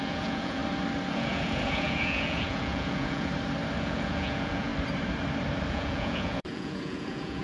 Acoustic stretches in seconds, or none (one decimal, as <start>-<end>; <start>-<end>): 0.6-1.1; 3.3-3.8; 4.7-5.7